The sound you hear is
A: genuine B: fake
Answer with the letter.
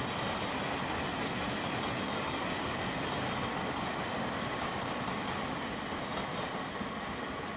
A